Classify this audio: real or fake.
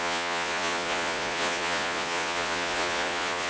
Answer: fake